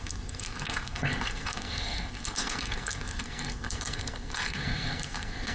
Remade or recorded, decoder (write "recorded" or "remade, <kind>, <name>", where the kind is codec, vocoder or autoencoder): remade, codec, SNAC